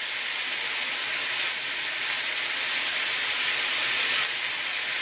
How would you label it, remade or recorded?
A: recorded